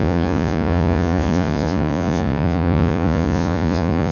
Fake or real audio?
fake